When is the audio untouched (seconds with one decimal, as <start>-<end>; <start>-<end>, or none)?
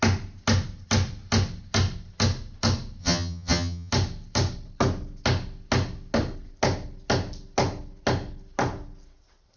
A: 0.0-3.0; 3.9-9.6